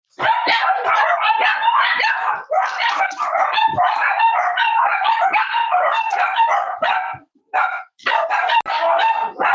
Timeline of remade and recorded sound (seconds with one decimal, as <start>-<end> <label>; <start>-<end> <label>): 0.0-4.0 remade; 4.0-5.0 recorded; 5.0-7.5 remade; 7.5-9.5 recorded